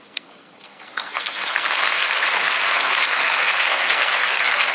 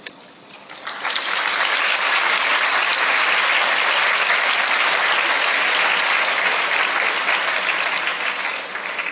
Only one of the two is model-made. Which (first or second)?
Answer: first